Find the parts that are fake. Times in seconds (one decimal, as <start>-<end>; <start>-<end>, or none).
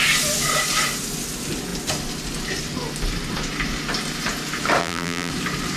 4.8-5.3